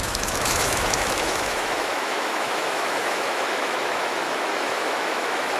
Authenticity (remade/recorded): remade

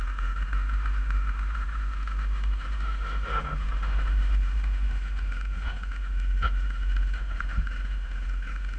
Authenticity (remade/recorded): remade